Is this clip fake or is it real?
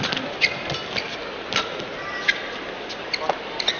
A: real